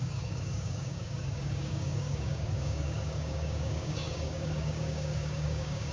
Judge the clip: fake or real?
fake